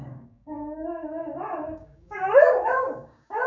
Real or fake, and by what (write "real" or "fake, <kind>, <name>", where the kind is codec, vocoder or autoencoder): fake, codec, DAC